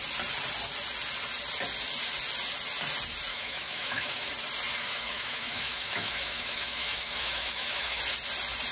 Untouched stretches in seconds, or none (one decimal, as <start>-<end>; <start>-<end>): 0.0-3.3; 4.3-4.7; 8.0-8.7